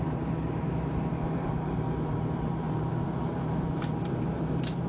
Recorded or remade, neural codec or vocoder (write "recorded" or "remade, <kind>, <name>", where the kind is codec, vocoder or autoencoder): remade, vocoder, BigVGAN v2